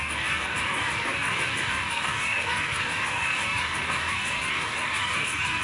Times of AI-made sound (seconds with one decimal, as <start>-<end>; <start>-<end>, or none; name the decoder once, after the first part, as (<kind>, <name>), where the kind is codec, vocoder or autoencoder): 0.0-5.6 (codec, DAC)